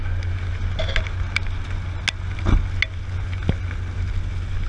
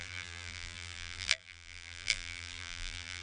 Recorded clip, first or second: first